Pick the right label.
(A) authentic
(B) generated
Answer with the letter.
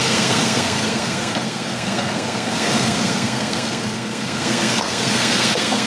B